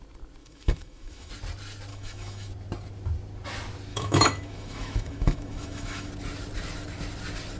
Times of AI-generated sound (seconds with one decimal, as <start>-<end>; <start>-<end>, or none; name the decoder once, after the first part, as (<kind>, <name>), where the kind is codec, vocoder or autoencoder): 0.4-1.3 (autoencoder, DAC-VAE); 1.9-2.5; 3.9-6.1